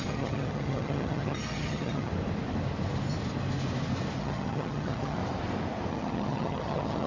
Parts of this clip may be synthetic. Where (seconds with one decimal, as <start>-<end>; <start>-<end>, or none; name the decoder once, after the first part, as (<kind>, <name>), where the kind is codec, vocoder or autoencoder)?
0.0-2.1 (vocoder, HiFi-GAN); 4.2-5.2; 5.9-7.1